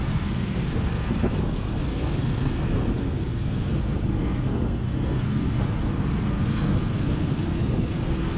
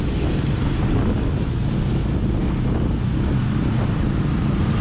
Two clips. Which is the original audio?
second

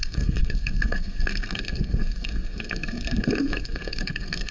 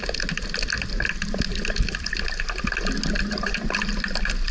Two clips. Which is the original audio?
second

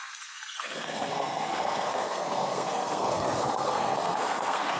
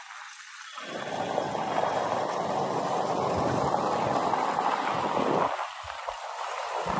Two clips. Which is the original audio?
second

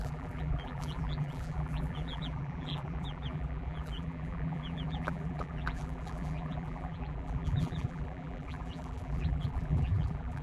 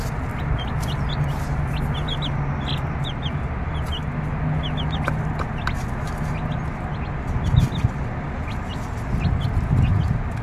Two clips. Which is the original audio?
second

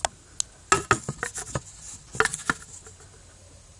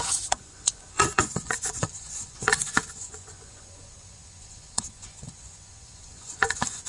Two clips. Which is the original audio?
first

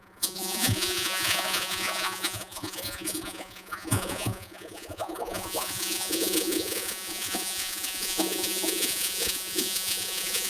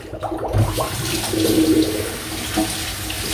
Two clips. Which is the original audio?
second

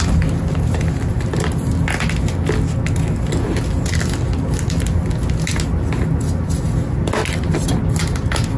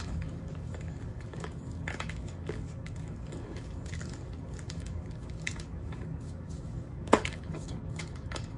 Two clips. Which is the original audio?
first